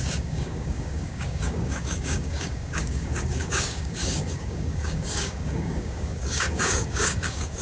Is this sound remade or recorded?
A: remade